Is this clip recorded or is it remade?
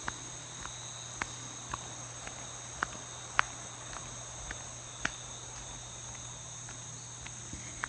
recorded